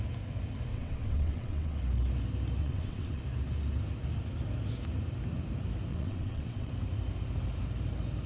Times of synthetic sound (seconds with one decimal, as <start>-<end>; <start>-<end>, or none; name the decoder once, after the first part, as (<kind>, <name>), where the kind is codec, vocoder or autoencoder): 0.7-1.8 (vocoder, WaveNeXt); 2.6-3.2; 5.9-6.7